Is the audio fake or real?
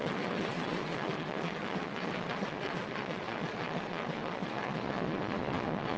fake